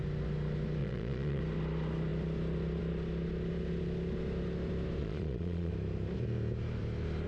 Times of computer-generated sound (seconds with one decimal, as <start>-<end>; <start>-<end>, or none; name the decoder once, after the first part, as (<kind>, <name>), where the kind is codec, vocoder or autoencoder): 0.8-1.4 (vocoder, Vocos); 5.0-5.7